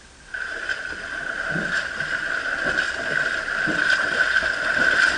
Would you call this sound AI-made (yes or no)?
yes